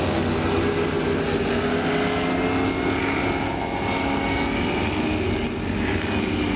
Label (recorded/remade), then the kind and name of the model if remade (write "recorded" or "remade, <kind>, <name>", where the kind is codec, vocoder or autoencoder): recorded